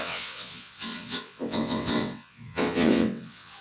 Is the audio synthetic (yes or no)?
yes